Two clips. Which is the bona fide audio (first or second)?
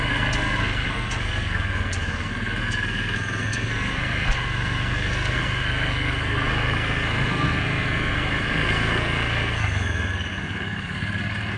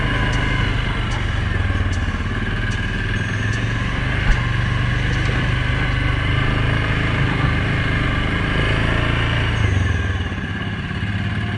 second